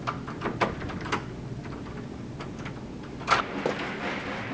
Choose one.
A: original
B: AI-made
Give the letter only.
A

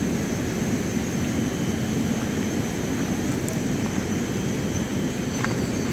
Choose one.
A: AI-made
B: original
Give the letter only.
B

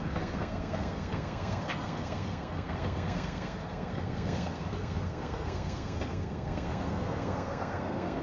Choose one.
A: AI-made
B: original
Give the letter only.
A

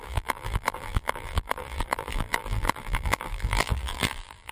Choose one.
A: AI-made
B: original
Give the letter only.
A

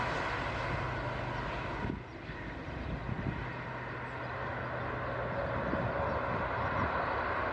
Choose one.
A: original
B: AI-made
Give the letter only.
A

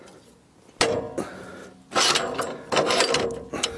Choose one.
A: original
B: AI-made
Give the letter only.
A